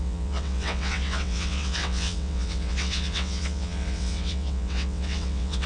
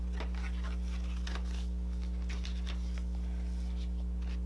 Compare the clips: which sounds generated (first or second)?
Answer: first